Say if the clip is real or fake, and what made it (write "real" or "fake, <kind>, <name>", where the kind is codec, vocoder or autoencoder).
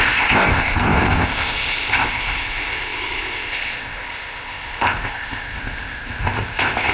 fake, codec, ZipCodec